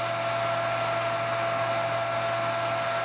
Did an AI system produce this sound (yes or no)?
no